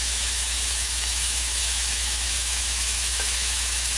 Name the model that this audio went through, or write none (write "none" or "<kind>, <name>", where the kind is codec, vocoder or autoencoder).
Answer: autoencoder, DAC-VAE